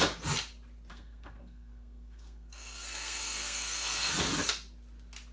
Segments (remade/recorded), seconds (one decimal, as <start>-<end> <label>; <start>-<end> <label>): 0.0-0.9 recorded; 0.9-4.1 remade; 4.1-5.3 recorded